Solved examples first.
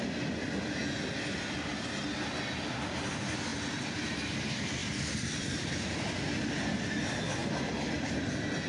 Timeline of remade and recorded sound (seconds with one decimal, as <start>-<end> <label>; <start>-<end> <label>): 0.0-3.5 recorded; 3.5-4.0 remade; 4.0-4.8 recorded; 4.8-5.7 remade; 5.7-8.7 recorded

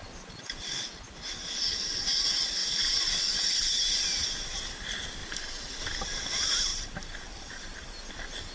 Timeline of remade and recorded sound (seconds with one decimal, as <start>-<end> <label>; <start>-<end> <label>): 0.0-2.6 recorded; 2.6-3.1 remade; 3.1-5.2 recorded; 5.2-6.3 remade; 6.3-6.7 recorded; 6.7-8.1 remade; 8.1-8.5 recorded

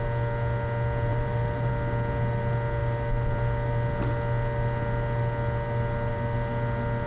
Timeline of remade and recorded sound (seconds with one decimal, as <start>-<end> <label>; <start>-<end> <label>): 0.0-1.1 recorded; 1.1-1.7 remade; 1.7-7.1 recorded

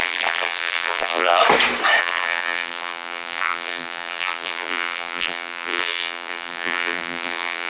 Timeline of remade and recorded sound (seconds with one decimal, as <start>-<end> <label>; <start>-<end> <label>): 0.0-1.4 remade; 1.4-2.0 recorded; 2.0-7.7 remade

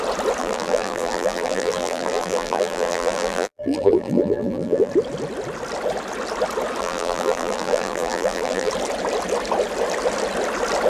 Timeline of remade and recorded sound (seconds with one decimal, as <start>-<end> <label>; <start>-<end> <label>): 0.0-0.4 recorded; 0.4-4.9 remade; 4.9-6.8 recorded; 6.8-8.7 remade; 8.7-10.9 recorded